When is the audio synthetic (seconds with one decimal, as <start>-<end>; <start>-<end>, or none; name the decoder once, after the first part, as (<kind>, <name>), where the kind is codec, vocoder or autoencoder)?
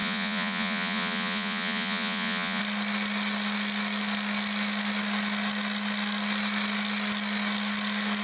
0.0-2.6 (vocoder, Vocos)